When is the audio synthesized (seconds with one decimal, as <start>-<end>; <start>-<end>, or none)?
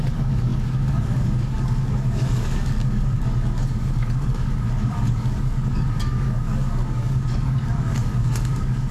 0.0-8.9